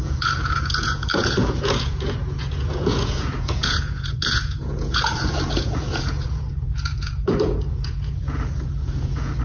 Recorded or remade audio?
remade